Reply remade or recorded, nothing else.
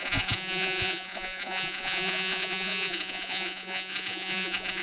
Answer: remade